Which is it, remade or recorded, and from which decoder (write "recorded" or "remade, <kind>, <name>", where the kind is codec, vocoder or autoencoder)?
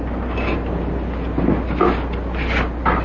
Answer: recorded